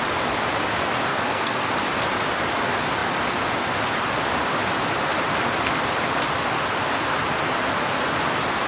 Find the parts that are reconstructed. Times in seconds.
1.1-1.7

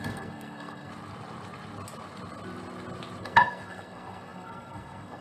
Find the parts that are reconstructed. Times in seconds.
0.0-0.9; 3.2-5.2

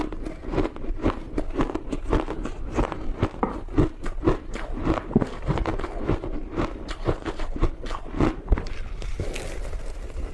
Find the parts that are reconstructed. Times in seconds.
none

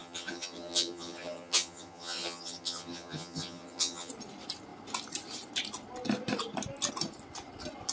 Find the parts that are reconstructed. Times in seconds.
0.0-4.1

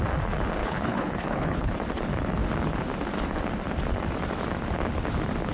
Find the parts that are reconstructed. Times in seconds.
0.6-1.7